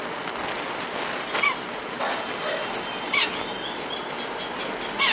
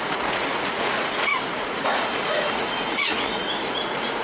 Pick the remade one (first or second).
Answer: second